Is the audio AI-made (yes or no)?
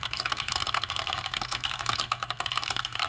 yes